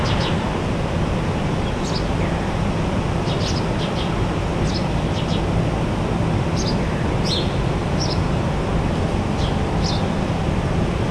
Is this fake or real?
real